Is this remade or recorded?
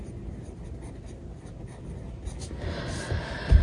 recorded